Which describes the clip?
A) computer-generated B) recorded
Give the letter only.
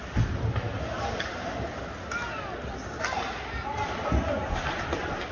B